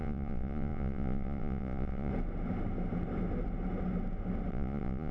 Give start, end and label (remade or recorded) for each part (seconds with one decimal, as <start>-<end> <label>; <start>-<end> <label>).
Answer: 0.0-2.1 remade; 2.1-4.5 recorded; 4.5-5.1 remade